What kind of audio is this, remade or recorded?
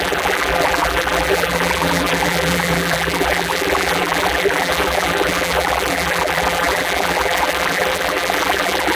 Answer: remade